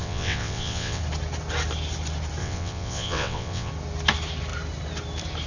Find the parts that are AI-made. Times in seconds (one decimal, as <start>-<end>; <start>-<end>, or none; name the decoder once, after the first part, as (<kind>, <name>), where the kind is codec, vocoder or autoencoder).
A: 0.0-1.0 (vocoder, WaveNeXt); 2.4-3.7